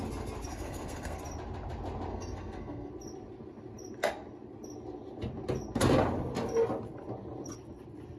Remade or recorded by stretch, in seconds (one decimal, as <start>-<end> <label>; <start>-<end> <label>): 0.0-0.5 recorded; 0.5-1.2 remade; 1.2-2.1 recorded; 2.1-2.9 remade; 2.9-8.2 recorded